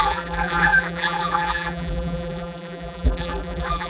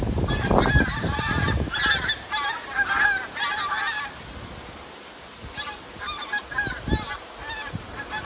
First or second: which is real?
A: second